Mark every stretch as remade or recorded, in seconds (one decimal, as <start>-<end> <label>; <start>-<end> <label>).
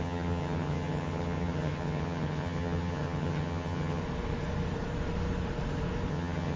0.0-4.0 remade; 4.0-6.1 recorded; 6.1-6.6 remade